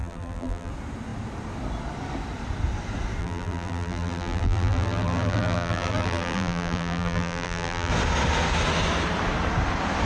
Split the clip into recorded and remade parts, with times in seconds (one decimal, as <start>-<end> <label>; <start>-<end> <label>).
0.0-0.7 remade; 0.7-3.2 recorded; 3.2-7.9 remade; 7.9-10.1 recorded